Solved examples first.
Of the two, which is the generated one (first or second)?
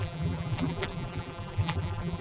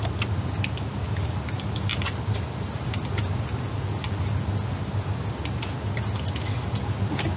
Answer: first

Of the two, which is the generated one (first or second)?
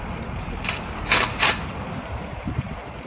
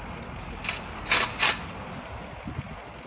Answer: first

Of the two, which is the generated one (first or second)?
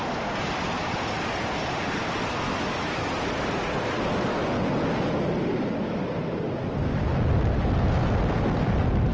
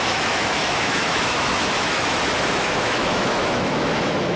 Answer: second